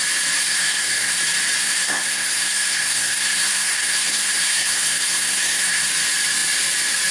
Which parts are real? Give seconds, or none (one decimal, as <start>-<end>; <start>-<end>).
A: 0.0-0.4; 1.2-1.6; 5.9-7.1